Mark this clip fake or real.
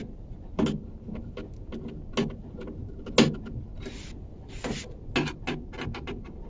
real